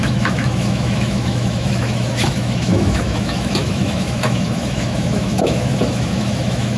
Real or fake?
fake